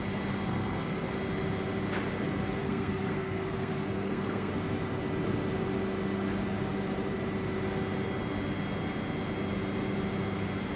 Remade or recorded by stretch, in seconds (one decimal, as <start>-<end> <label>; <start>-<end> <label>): 0.0-0.5 recorded; 0.5-1.1 remade; 1.1-2.6 recorded; 2.6-4.5 remade; 4.5-10.8 recorded